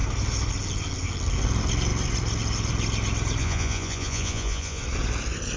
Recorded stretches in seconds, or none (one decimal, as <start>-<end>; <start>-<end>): 0.0-3.4; 4.8-5.6